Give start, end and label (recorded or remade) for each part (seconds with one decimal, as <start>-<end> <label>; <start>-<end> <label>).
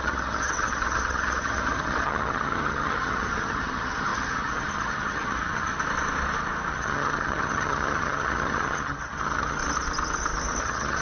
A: 0.0-5.7 remade; 5.7-6.7 recorded; 6.7-9.6 remade; 9.6-10.6 recorded; 10.6-11.0 remade